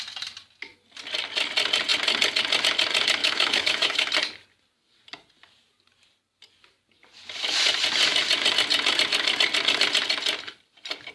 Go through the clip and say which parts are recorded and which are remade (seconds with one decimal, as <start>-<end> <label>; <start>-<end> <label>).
0.0-3.2 recorded; 3.2-4.1 remade; 4.1-11.1 recorded

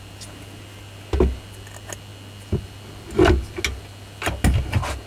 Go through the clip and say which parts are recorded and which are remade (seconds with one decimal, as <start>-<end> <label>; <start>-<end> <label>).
0.0-5.1 recorded